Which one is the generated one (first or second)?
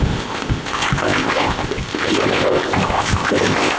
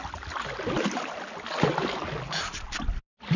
first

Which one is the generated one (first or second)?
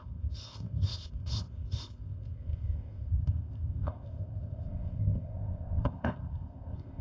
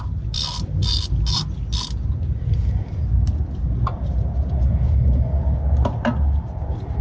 first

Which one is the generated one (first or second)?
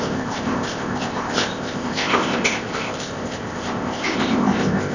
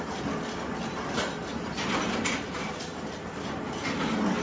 first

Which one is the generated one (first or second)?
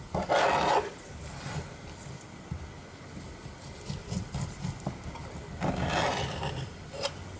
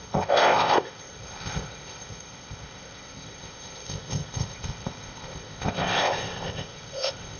second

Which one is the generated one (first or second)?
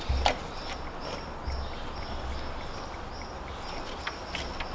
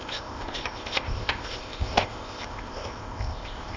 second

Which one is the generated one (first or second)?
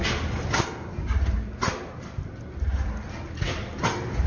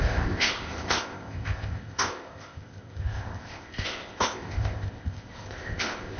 second